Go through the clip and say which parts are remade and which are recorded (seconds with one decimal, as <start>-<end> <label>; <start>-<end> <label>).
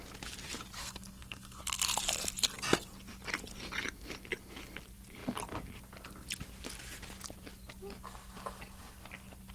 0.0-0.8 recorded; 0.8-1.6 remade; 1.6-9.5 recorded